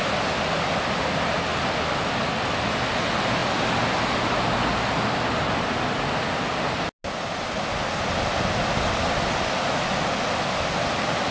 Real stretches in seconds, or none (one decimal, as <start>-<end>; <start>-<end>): 0.0-11.3